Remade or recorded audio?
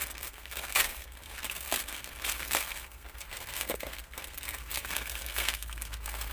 remade